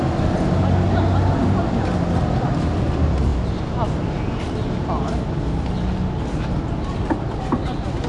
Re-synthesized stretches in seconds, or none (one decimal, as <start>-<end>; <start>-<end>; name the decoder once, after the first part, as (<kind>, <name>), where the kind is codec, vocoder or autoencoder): none